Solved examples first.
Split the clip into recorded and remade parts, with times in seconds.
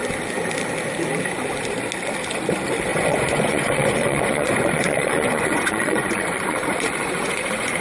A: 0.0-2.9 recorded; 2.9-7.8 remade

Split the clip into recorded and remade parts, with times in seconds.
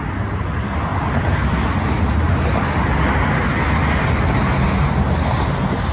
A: 0.0-5.9 recorded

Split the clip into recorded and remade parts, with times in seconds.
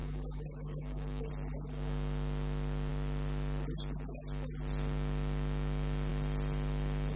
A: 0.0-1.3 remade; 1.3-7.2 recorded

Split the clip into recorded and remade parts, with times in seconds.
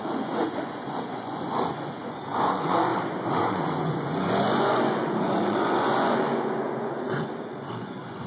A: 0.0-2.9 remade; 2.9-3.4 recorded; 3.4-8.3 remade